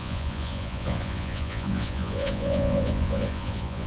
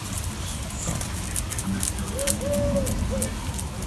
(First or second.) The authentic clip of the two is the second